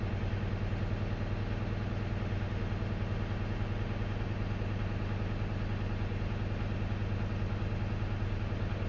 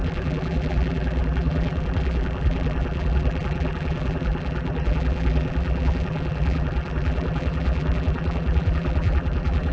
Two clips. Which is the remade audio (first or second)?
second